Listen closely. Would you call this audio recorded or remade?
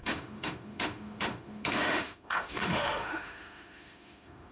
remade